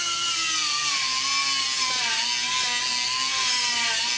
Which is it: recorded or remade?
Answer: recorded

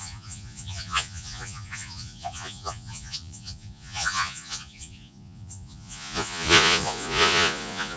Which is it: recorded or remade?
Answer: remade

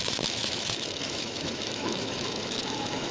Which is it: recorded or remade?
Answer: remade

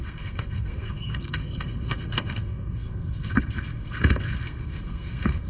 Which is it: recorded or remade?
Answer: remade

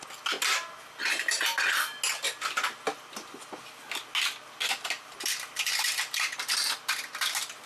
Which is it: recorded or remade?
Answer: recorded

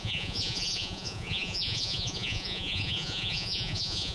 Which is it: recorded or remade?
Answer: remade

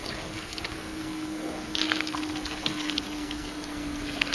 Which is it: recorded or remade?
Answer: remade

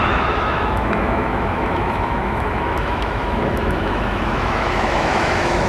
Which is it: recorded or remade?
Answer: remade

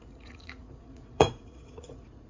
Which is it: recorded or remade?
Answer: remade